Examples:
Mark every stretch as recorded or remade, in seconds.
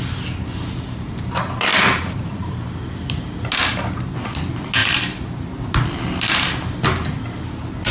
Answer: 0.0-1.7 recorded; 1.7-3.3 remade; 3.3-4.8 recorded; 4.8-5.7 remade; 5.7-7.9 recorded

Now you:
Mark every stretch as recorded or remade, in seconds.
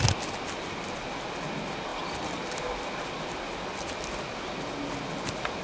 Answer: 0.0-5.6 recorded